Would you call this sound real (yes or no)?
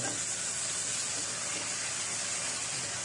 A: yes